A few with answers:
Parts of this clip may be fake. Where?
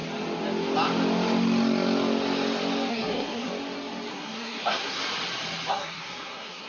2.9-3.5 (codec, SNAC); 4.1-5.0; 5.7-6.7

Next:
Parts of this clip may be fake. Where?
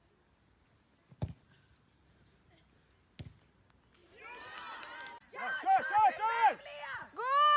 4.0-6.1 (vocoder, BigVGAN v2)